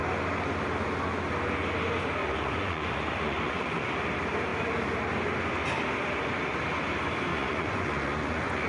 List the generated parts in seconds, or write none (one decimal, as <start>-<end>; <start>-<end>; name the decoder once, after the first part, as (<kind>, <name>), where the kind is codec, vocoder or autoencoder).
2.2-3.9 (vocoder, Vocos); 7.3-8.7